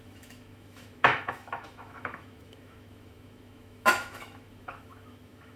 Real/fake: fake